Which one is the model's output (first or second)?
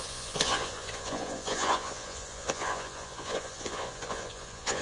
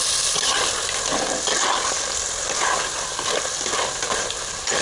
first